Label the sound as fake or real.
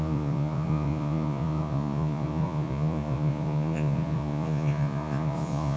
fake